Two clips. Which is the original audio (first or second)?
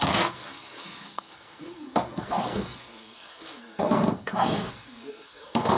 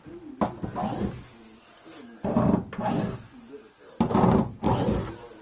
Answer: second